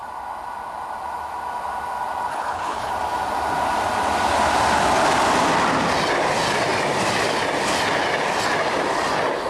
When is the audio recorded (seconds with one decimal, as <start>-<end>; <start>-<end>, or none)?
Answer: 0.0-2.3; 2.9-9.5